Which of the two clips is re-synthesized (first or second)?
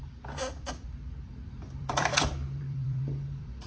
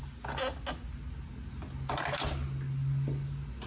first